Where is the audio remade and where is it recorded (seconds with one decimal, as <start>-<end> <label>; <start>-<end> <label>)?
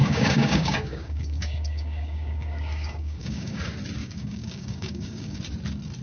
0.0-3.6 remade; 3.6-4.0 recorded; 4.0-5.4 remade; 5.4-6.0 recorded